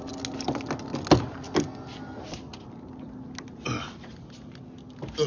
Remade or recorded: recorded